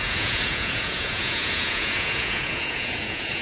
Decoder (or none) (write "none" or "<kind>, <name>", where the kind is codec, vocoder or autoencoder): vocoder, Vocos